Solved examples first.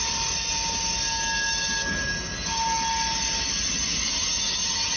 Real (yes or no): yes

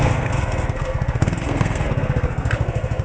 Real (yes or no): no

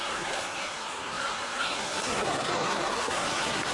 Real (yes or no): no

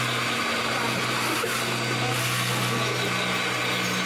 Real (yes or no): yes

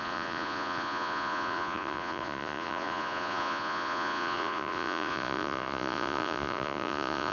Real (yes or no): no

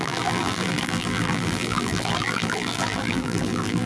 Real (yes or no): no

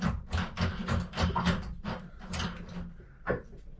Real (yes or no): yes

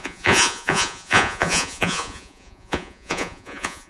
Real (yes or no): no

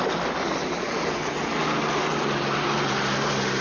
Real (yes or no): yes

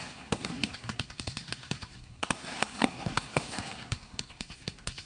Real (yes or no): no